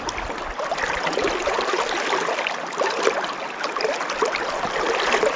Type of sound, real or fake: real